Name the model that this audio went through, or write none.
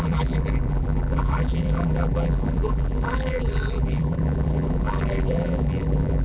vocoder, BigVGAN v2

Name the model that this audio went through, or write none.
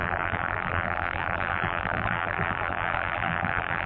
vocoder, BigVGAN v2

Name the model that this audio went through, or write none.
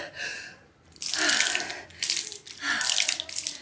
none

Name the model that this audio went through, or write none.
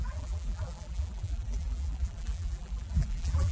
vocoder, BigVGAN v2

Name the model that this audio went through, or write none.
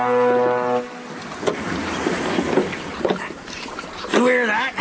none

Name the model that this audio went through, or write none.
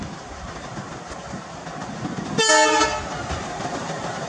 none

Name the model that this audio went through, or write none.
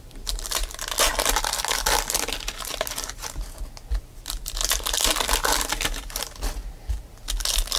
none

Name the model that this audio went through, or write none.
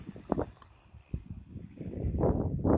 vocoder, BigVGAN v2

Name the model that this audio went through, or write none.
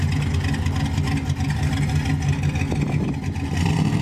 none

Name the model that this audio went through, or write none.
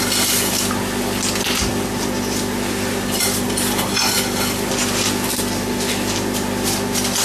none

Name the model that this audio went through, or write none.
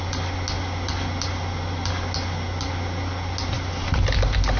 none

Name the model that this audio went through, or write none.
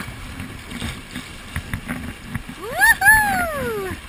none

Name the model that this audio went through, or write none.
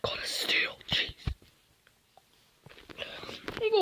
none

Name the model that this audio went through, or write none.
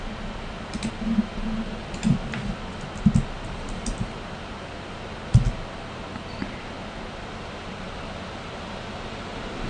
none